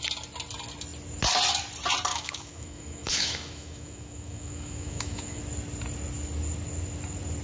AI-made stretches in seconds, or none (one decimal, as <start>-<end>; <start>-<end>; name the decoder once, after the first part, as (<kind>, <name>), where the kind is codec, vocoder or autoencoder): 2.1-5.4 (autoencoder, DAC-VAE)